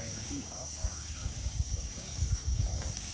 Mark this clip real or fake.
fake